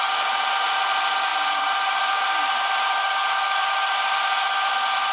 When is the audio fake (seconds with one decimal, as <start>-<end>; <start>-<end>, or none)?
none